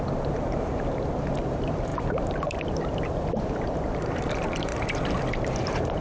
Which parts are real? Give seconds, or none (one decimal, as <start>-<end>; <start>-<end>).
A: 4.7-5.3